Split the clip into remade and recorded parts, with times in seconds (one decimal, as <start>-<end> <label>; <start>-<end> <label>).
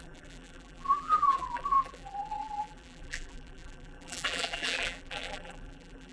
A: 0.0-6.1 remade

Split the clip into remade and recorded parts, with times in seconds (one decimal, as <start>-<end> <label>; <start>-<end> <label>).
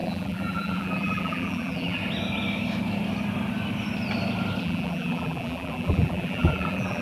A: 0.0-2.0 remade; 2.0-4.6 recorded; 4.6-7.0 remade